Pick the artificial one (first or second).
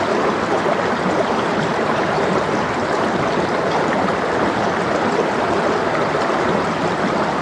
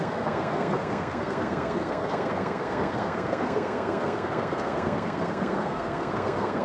second